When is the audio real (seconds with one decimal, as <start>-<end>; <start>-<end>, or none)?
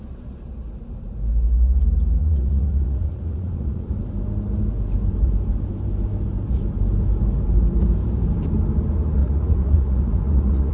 0.0-2.2; 3.9-9.2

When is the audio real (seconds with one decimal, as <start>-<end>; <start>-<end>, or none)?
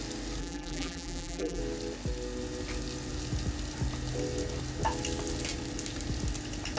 0.0-0.4; 1.6-6.8